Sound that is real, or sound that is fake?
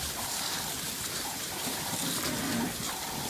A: real